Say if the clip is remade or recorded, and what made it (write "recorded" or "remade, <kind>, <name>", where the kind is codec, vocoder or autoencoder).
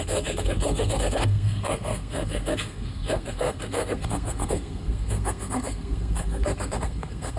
remade, codec, SNAC